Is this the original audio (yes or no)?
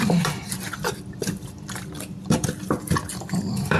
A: no